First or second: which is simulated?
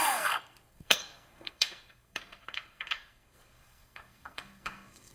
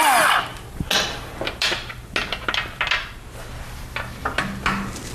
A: first